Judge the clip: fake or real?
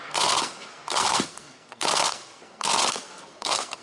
fake